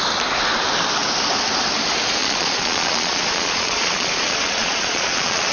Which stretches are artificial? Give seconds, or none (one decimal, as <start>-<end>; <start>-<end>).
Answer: 2.2-5.5